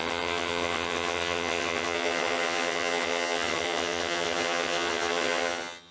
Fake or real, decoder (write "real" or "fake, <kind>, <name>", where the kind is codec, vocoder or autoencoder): fake, vocoder, HiFi-GAN